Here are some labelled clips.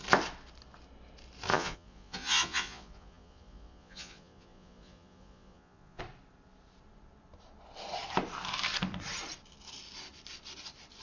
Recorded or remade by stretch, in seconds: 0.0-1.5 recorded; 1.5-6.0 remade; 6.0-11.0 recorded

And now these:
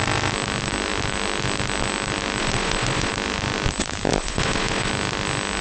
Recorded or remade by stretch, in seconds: 0.0-2.4 recorded; 2.4-3.1 remade; 3.1-4.1 recorded; 4.1-4.9 remade; 4.9-5.6 recorded

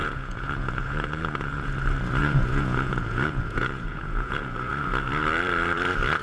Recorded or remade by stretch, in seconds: 0.0-1.7 remade; 1.7-2.2 recorded; 2.2-4.7 remade; 4.7-6.2 recorded